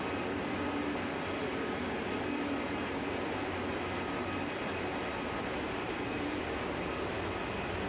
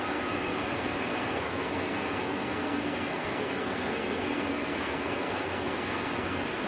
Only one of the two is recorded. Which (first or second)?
first